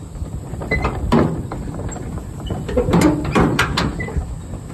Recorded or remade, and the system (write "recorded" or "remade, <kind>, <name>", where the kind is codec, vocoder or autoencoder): recorded